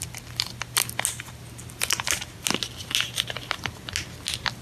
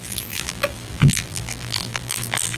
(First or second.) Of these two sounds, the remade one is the second